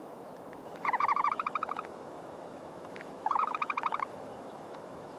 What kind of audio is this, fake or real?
fake